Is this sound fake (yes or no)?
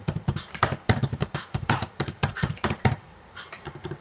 yes